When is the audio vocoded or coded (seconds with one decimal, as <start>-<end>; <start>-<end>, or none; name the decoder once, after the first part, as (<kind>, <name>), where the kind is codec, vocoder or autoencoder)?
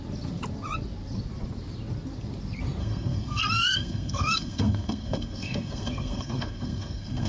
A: 2.8-7.3 (codec, SNAC)